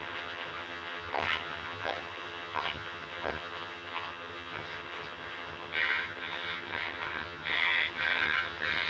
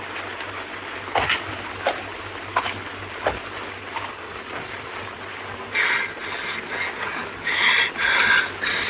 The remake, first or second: first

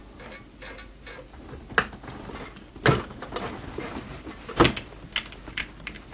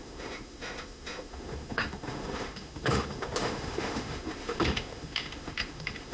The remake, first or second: second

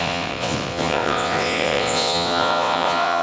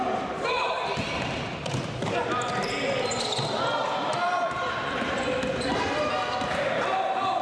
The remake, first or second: first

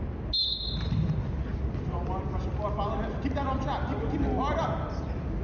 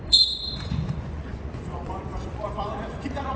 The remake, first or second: second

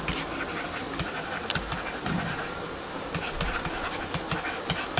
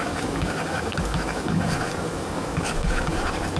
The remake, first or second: second